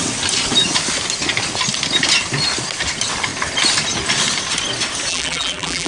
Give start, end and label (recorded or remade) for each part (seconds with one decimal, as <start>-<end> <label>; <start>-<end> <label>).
0.0-5.1 recorded; 5.1-5.9 remade